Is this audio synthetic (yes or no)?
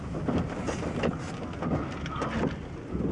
no